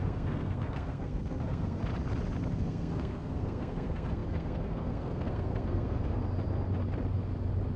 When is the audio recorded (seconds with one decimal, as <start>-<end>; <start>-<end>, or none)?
1.8-2.5; 6.2-7.8